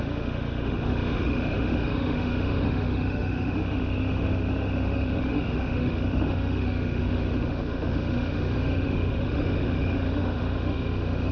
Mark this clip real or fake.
fake